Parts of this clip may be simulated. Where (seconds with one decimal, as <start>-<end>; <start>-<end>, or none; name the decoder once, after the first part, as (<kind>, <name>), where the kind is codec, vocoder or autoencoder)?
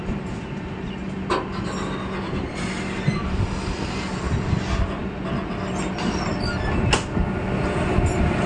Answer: none